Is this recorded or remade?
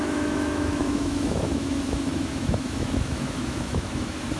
remade